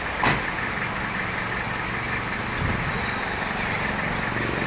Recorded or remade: recorded